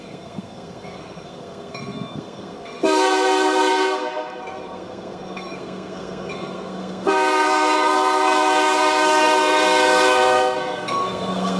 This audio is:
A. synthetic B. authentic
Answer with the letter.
A